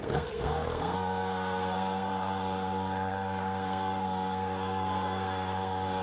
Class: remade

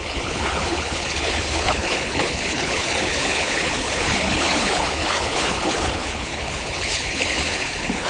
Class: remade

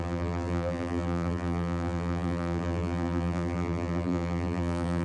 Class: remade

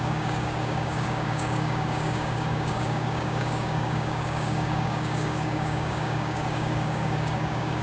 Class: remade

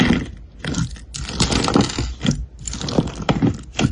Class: recorded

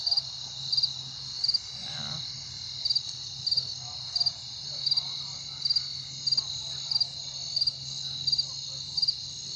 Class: recorded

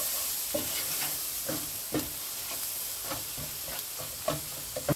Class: recorded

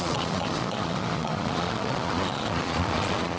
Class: remade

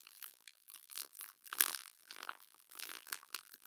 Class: remade